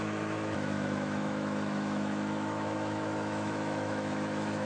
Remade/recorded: remade